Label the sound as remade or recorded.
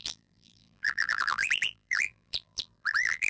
remade